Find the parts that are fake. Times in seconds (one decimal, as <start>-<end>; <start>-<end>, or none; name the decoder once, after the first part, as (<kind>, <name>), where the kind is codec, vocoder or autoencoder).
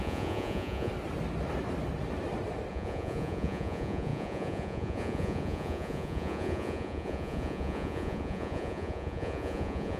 0.0-0.9 (vocoder, Vocos); 2.7-10.0